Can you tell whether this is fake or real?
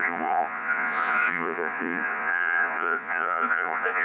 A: fake